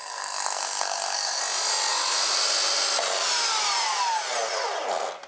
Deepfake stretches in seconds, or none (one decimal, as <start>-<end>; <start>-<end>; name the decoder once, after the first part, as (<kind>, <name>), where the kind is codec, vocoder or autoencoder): 0.0-1.4 (codec, SNAC)